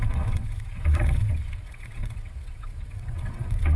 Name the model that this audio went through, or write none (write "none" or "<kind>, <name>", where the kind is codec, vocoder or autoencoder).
vocoder, WaveNeXt